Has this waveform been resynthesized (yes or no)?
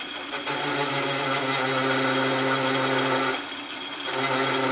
no